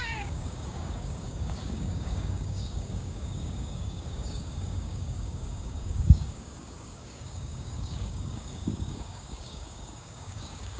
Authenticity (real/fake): fake